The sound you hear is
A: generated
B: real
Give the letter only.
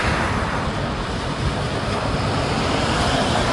B